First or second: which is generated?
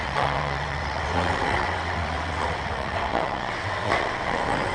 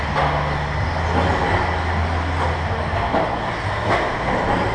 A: first